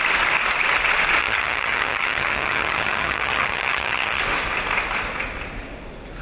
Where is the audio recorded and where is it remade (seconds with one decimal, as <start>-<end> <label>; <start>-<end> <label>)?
0.0-1.2 recorded; 1.2-4.2 remade; 4.2-6.2 recorded